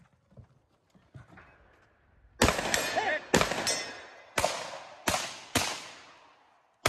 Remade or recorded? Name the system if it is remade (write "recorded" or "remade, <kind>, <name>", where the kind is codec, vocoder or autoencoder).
recorded